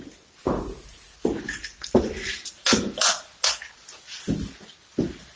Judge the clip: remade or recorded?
recorded